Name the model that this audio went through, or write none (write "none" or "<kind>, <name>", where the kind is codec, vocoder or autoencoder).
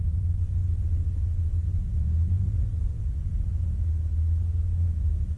none